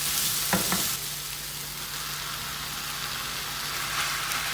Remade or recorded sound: recorded